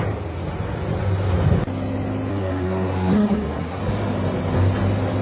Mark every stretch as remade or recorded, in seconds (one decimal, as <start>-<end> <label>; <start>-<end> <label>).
0.0-2.3 recorded; 2.3-3.8 remade; 3.8-5.2 recorded